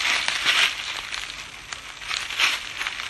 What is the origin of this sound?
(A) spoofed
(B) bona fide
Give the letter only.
B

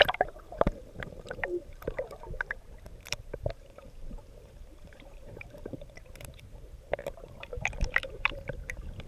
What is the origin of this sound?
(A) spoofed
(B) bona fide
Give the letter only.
A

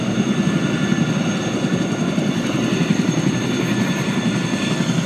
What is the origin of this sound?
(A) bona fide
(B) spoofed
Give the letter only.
A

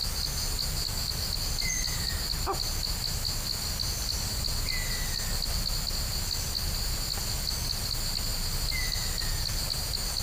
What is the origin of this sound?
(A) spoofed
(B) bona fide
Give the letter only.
B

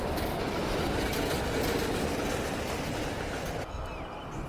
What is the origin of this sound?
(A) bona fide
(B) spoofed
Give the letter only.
A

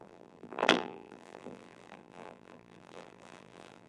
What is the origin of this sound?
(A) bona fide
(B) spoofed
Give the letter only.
B